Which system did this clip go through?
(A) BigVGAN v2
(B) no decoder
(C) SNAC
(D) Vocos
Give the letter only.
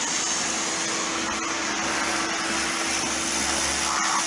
B